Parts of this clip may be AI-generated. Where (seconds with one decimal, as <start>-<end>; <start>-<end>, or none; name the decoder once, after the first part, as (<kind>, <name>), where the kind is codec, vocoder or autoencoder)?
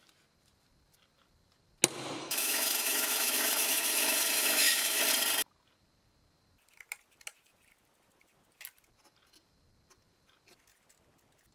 2.2-5.0 (autoencoder, DAC-VAE)